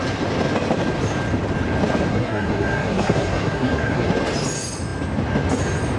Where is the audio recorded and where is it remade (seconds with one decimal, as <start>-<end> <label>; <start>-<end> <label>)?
0.0-2.1 recorded; 2.1-4.1 remade; 4.1-6.0 recorded